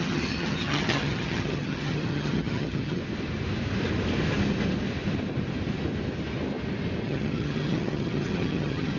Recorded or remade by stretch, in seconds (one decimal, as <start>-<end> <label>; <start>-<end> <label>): 0.0-3.0 remade; 3.0-7.0 recorded; 7.0-9.0 remade